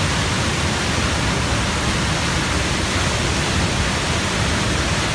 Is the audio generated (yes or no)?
no